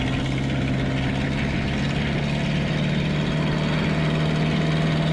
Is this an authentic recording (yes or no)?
yes